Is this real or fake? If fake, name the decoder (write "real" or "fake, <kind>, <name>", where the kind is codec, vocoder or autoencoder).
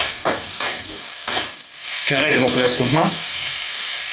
fake, codec, DAC